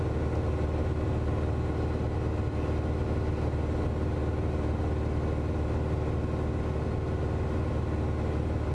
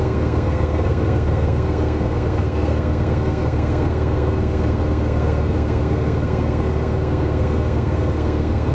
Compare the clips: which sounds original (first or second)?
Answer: first